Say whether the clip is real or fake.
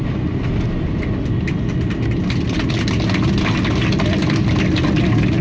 real